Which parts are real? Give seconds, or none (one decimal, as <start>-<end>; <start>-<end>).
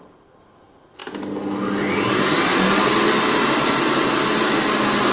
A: 0.0-5.1